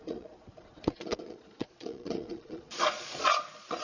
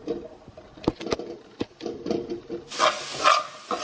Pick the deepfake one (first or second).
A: first